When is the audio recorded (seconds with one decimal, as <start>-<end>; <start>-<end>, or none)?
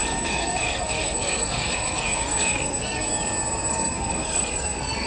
3.1-3.7